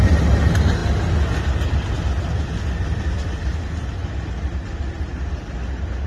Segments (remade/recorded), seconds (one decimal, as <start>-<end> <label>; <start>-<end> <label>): 0.0-6.1 recorded